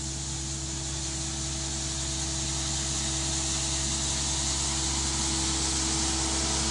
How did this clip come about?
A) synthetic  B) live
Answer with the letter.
B